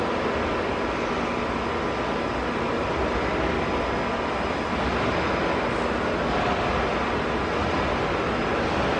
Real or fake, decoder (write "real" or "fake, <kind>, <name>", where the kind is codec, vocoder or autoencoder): real